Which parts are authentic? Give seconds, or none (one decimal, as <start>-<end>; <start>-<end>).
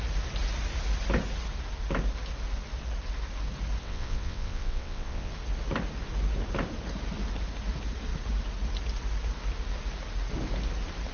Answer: 0.0-3.8; 5.3-11.1